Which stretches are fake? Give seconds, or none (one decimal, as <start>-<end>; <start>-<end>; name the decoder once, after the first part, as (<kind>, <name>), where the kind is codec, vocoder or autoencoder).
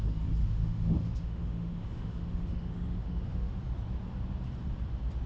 0.4-3.6 (autoencoder, DAC-VAE)